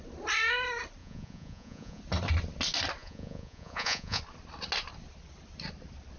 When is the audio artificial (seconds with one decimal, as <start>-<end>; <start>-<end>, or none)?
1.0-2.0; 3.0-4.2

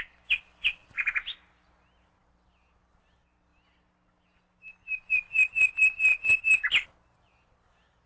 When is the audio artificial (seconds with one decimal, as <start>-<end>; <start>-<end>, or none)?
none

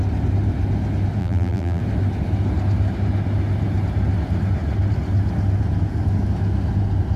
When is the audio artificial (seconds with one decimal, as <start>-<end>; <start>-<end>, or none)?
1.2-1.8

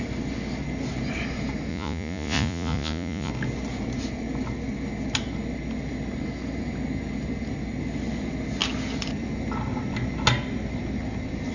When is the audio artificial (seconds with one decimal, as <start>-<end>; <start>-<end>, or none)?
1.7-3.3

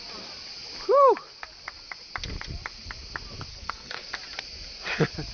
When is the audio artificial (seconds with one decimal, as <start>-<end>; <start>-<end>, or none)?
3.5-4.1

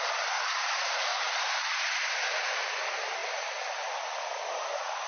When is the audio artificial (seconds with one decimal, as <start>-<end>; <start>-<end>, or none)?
none